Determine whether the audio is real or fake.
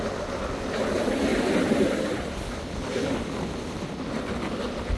real